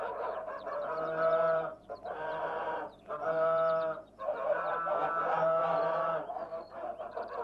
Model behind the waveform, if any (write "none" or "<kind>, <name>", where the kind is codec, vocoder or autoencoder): vocoder, BigVGAN v2